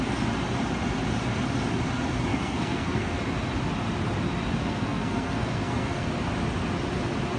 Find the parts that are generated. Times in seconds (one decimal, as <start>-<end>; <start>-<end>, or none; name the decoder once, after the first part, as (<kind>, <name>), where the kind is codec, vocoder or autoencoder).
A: 2.3-3.2 (codec, SNAC); 4.6-6.1